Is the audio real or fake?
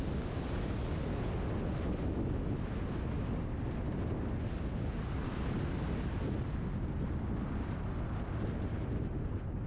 real